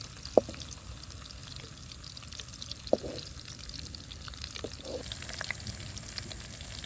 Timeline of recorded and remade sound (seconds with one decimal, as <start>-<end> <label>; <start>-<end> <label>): 0.0-6.9 recorded